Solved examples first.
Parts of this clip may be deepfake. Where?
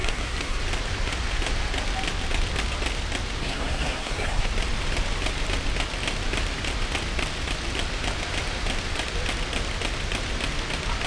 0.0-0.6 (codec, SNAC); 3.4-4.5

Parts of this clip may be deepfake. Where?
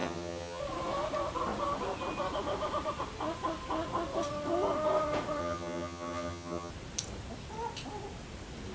0.0-0.6 (vocoder, HiFi-GAN); 5.4-6.7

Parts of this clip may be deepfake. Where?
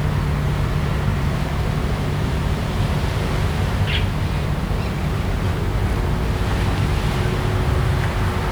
1.1-2.5 (vocoder, BigVGAN v2)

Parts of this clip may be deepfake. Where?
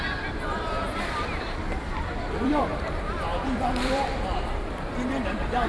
0.0-5.7 (vocoder, BigVGAN v2)